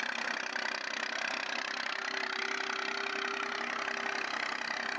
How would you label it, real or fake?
real